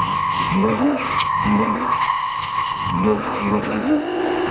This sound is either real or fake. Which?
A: fake